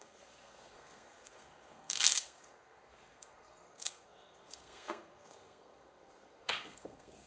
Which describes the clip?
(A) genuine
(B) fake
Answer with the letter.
B